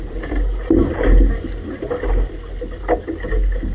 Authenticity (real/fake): real